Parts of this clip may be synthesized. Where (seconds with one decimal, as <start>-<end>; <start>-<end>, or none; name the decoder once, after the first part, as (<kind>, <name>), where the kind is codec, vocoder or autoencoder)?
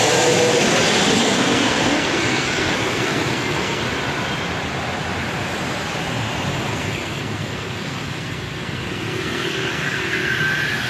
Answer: 1.2-3.8 (codec, SNAC); 6.5-10.4